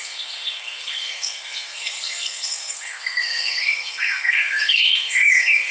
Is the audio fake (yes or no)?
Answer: yes